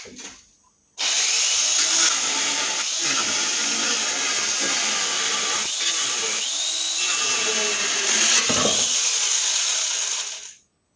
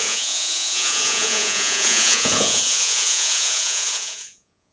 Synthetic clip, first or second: second